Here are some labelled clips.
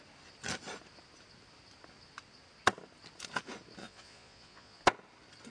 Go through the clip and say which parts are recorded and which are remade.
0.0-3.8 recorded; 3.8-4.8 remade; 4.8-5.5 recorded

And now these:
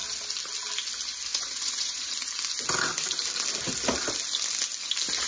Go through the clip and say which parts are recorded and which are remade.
0.0-1.3 recorded; 1.3-2.1 remade; 2.1-5.3 recorded

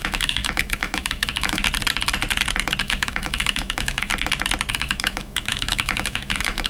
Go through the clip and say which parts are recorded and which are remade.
0.0-1.6 remade; 1.6-2.8 recorded; 2.8-4.1 remade; 4.1-4.7 recorded; 4.7-6.7 remade

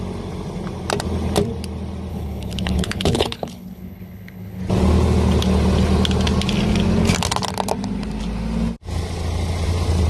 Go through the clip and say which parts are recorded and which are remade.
0.0-2.1 recorded; 2.1-4.6 remade; 4.6-10.1 recorded